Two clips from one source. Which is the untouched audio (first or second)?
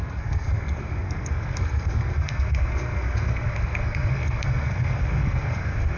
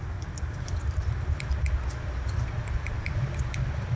second